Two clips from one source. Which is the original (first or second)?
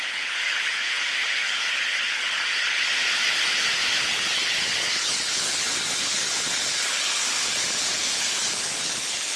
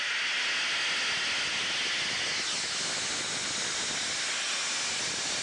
second